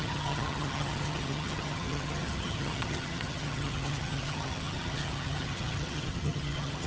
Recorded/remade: remade